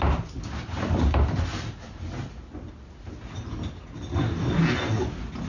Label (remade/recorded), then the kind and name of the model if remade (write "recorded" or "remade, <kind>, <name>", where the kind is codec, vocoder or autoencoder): recorded